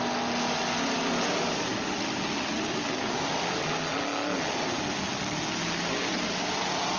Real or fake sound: real